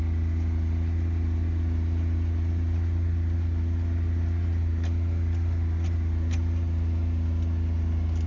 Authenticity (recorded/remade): recorded